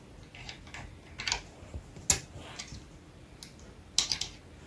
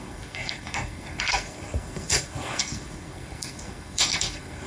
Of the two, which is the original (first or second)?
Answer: first